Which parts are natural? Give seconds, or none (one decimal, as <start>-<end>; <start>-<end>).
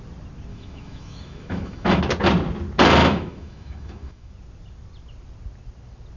0.0-0.5; 2.0-3.0; 4.3-6.2